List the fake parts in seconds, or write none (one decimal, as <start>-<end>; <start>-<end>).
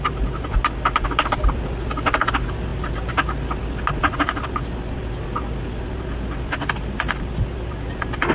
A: none